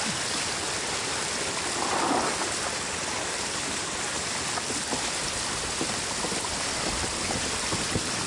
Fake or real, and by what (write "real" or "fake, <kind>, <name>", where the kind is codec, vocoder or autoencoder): real